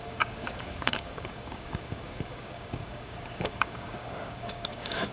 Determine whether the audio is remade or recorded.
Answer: remade